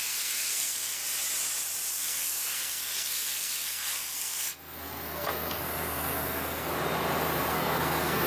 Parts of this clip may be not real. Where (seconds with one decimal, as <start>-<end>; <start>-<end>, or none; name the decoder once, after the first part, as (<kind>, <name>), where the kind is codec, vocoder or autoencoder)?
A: 0.0-1.0 (codec, SNAC); 1.9-6.7; 7.5-8.3